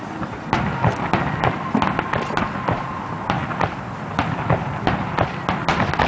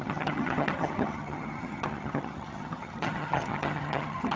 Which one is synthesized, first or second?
second